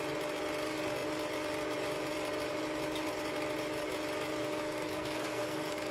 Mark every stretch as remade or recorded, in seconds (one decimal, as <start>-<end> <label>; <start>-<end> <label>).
0.0-4.4 recorded; 4.4-5.9 remade